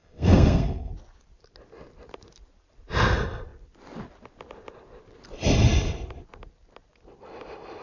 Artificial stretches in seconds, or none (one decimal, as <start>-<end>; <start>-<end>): 0.0-0.9